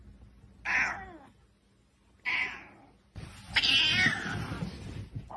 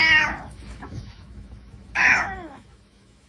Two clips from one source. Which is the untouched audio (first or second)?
first